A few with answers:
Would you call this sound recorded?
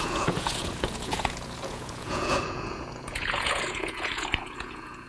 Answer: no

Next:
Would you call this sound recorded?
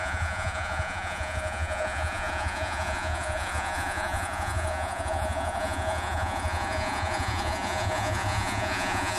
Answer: no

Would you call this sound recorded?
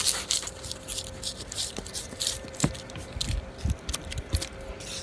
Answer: yes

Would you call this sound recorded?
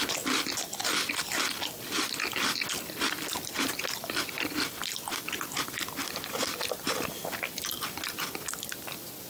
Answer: yes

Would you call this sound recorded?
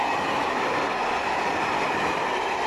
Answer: yes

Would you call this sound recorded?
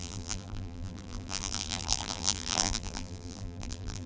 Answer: no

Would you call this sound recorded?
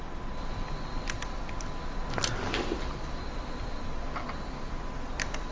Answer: yes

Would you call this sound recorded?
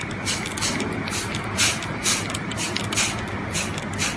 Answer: yes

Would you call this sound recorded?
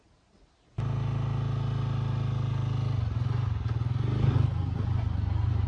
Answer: yes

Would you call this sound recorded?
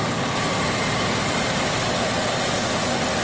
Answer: yes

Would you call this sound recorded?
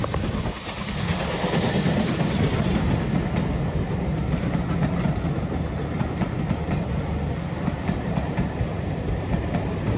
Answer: yes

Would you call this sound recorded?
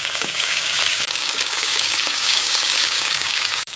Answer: no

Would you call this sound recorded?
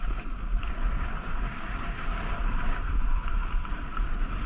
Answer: yes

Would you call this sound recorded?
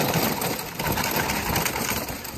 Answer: yes